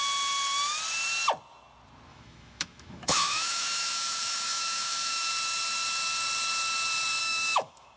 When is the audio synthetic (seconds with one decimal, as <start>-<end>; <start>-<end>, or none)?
2.1-5.3; 7.2-8.0